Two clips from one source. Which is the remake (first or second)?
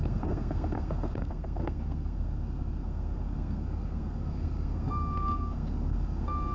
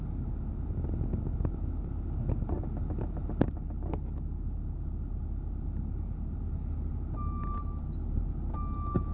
first